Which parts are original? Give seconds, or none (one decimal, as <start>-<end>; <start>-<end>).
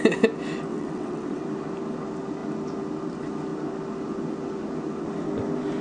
0.0-0.7; 1.4-5.8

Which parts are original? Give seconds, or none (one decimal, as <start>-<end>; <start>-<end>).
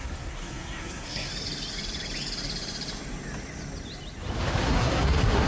1.3-4.6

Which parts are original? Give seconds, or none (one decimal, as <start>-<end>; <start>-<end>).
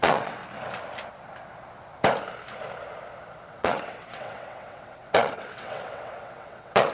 0.4-3.5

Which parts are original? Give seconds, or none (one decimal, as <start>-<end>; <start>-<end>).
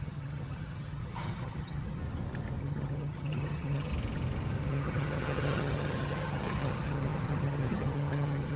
2.0-2.6; 3.9-4.7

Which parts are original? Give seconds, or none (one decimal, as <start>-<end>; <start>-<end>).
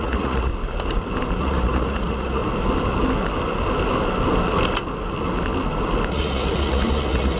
0.5-1.4; 2.4-6.1